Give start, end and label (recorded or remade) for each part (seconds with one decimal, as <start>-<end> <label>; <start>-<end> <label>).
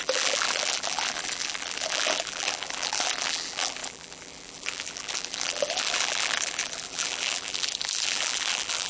0.0-8.9 remade